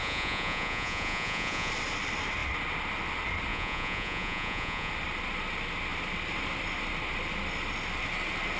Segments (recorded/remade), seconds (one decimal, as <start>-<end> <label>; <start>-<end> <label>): 0.0-1.7 remade; 1.7-3.5 recorded; 3.5-4.9 remade; 4.9-8.6 recorded